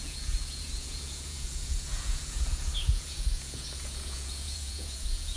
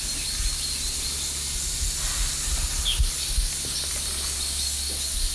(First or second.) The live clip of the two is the second